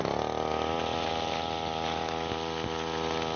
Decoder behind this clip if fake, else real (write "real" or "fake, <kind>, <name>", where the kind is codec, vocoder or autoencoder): real